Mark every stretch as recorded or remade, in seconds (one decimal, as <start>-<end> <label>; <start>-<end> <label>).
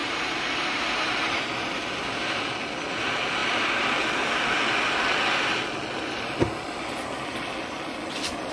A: 0.0-2.4 remade; 2.4-8.5 recorded